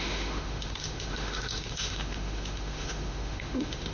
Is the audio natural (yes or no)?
no